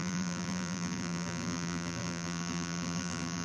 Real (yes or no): no